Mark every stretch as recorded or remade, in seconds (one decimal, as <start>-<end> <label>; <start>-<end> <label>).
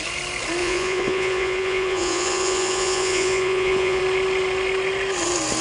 0.0-0.6 recorded; 0.6-4.0 remade; 4.0-5.6 recorded